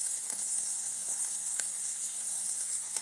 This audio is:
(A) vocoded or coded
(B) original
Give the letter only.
A